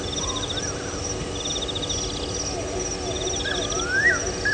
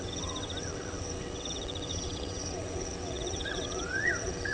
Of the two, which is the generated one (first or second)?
second